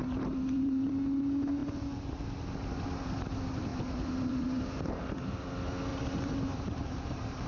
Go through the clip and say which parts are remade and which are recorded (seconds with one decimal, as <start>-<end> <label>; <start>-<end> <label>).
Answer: 0.0-0.9 remade; 0.9-3.7 recorded; 3.7-4.9 remade; 4.9-5.9 recorded; 5.9-7.5 remade